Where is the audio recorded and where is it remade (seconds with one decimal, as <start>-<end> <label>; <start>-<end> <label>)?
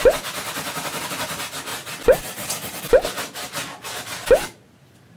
0.0-5.2 recorded